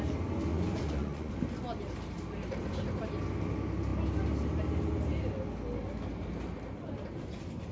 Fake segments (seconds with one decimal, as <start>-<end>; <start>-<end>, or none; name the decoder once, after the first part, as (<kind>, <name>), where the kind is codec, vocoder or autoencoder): 0.5-1.3 (vocoder, Vocos)

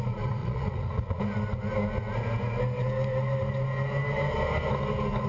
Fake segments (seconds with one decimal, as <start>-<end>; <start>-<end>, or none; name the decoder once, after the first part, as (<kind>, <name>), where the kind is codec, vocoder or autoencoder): 0.4-1.2 (vocoder, Vocos)

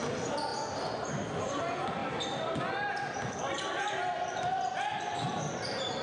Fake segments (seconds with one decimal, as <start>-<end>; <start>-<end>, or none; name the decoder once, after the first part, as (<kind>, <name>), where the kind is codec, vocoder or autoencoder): 0.0-0.5 (vocoder, BigVGAN v2); 1.1-6.0

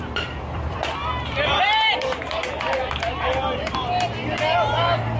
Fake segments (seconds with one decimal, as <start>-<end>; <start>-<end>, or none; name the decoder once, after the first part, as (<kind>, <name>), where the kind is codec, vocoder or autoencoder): 0.0-1.0 (vocoder, BigVGAN v2); 1.6-4.2

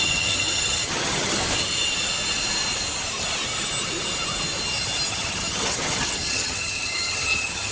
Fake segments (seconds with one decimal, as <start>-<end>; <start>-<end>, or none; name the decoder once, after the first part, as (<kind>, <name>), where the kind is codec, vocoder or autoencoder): 0.0-1.4 (vocoder, HiFi-GAN); 5.1-7.7